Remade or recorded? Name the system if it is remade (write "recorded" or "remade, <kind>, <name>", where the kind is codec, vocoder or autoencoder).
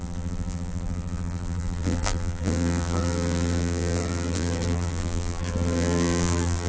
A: remade, vocoder, BigVGAN v2